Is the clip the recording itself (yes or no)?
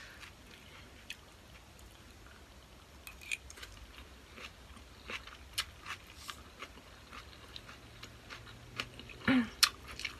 yes